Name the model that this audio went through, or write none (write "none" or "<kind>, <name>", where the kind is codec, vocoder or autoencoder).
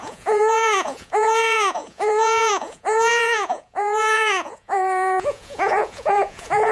vocoder, Vocos